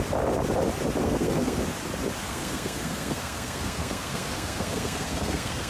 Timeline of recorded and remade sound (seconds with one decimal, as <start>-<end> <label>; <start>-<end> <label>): 0.0-1.0 recorded; 1.0-1.6 remade; 1.6-2.2 recorded; 2.2-5.7 remade